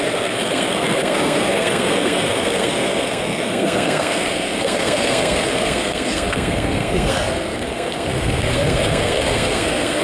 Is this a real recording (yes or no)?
no